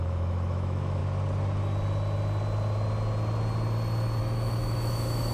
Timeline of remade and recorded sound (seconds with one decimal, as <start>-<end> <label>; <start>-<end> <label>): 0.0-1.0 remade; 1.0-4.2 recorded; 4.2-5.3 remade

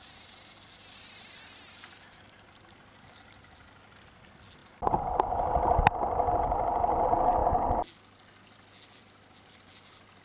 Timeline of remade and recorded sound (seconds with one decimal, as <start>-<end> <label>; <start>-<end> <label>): 0.0-10.2 recorded

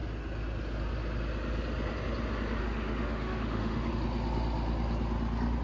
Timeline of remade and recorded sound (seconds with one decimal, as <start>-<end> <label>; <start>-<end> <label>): 0.0-2.6 recorded; 2.6-3.9 remade; 3.9-5.6 recorded

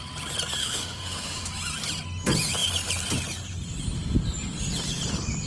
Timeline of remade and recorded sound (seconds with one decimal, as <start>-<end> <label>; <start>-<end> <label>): 0.0-0.6 recorded; 0.6-1.5 remade; 1.5-5.5 recorded

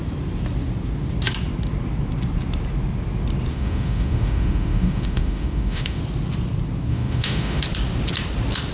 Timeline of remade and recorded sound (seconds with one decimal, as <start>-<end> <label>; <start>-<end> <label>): 0.0-3.5 recorded; 3.5-6.0 remade; 6.0-6.9 recorded; 6.9-7.6 remade; 7.6-8.7 recorded